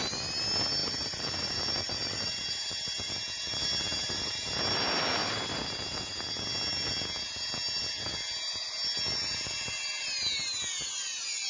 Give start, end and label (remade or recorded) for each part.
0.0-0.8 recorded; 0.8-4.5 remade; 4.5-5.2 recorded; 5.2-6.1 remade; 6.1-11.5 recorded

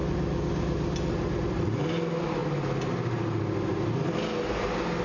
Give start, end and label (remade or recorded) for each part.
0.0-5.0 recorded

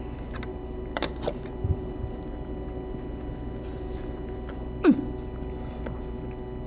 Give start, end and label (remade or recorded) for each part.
0.0-0.5 recorded; 0.5-1.9 remade; 1.9-6.7 recorded

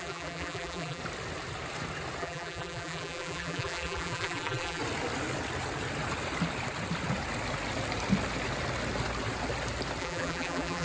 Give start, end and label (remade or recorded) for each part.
0.0-1.0 remade; 1.0-2.2 recorded; 2.2-4.8 remade; 4.8-10.0 recorded; 10.0-10.8 remade

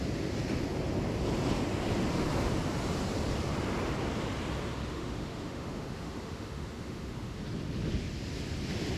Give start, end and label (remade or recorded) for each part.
0.0-4.9 recorded; 4.9-7.4 remade; 7.4-9.0 recorded

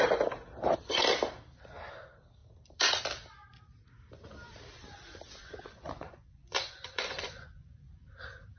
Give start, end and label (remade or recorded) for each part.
0.0-5.4 recorded; 5.4-7.9 remade; 7.9-8.6 recorded

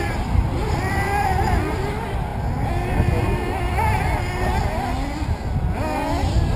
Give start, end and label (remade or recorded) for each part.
0.0-6.6 recorded